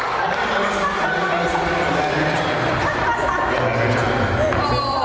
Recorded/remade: recorded